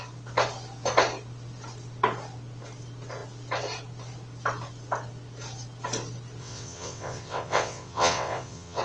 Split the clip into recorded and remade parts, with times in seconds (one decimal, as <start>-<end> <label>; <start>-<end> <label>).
0.0-6.4 recorded; 6.4-8.8 remade